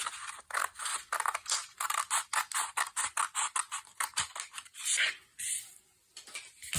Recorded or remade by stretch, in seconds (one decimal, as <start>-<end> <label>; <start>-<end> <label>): 0.0-6.8 recorded

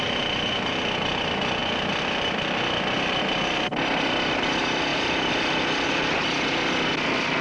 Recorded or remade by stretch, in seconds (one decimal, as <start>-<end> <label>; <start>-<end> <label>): 0.0-1.6 recorded; 1.6-3.2 remade; 3.2-4.9 recorded; 4.9-6.4 remade; 6.4-7.4 recorded